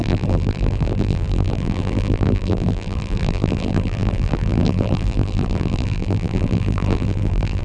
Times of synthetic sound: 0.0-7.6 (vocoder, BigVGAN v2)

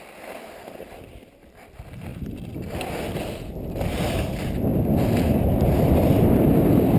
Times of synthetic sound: 0.0-2.1 (vocoder, BigVGAN v2); 3.1-7.0

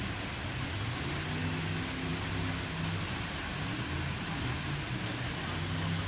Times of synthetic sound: none

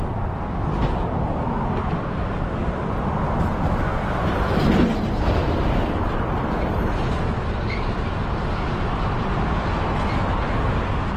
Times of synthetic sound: 3.9-5.4 (vocoder, BigVGAN v2)

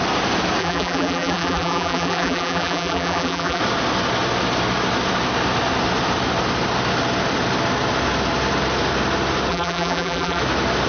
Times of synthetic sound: 0.6-3.6 (vocoder, BigVGAN v2); 9.5-10.4

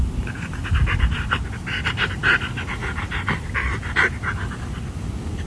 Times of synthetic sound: 2.8-3.7 (vocoder, BigVGAN v2)

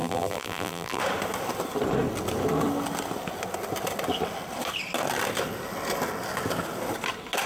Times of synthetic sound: 0.0-1.0 (vocoder, BigVGAN v2)